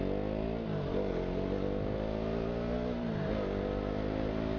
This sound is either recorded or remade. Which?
recorded